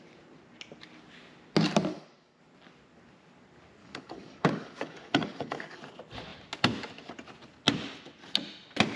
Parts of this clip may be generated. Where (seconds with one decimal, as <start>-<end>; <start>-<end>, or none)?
1.9-2.4; 3.8-5.8